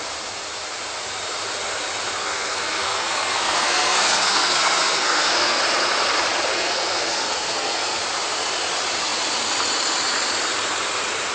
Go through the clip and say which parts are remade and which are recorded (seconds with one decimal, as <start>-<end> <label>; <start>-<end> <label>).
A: 0.0-2.2 recorded; 2.2-5.6 remade; 5.6-6.5 recorded; 6.5-8.0 remade; 8.0-11.3 recorded